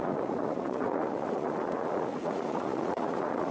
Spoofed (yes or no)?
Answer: yes